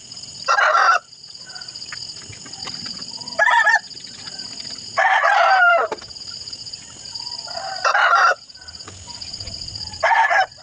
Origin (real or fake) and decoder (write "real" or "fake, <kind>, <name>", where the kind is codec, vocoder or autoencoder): real